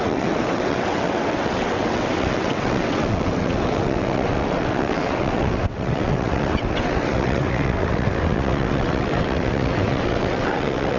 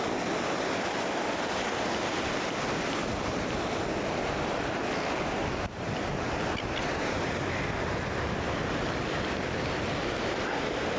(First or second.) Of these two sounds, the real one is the second